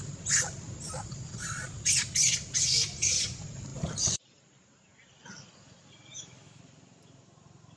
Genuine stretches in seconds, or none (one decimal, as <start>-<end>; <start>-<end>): 0.0-6.1; 6.6-7.8